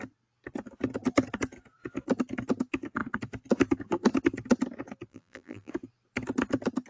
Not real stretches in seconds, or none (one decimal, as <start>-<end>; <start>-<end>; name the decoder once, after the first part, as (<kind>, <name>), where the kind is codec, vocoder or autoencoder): 5.1-5.7 (vocoder, BigVGAN v2)

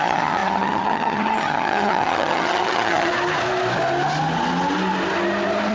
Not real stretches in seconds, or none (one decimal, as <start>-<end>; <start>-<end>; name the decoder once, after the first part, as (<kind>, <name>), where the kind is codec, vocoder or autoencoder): 0.0-3.1 (vocoder, HiFi-GAN)

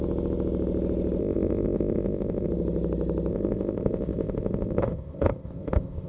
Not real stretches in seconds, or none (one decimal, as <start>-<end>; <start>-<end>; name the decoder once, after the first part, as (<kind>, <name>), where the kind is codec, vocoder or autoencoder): 1.2-2.5 (codec, ZipCodec); 3.3-6.1

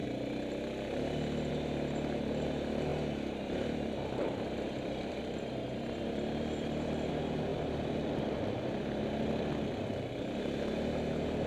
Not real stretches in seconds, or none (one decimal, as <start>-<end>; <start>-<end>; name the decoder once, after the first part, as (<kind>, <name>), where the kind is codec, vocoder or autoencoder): 2.9-7.1 (vocoder, BigVGAN v2)

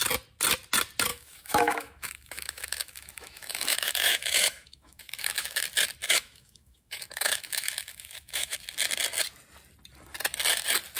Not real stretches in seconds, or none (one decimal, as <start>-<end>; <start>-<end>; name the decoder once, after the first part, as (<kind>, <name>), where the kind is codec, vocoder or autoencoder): 1.1-5.6 (autoencoder, DAC-VAE); 6.0-8.6

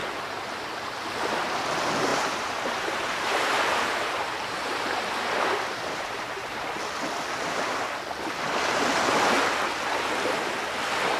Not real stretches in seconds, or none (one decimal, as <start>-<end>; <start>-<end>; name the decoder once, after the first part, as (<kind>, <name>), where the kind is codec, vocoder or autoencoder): 2.1-6.8 (vocoder, BigVGAN v2)